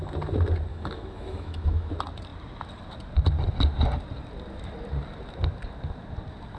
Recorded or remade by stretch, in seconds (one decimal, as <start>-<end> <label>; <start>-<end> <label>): 0.0-0.7 recorded; 0.7-1.9 remade; 1.9-6.6 recorded